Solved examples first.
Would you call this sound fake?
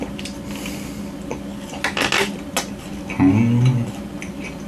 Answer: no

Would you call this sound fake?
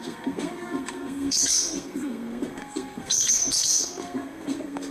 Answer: yes